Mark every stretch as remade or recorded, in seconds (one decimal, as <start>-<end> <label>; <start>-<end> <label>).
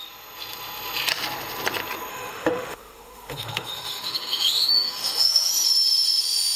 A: 0.0-2.1 recorded; 2.1-5.5 remade; 5.5-6.6 recorded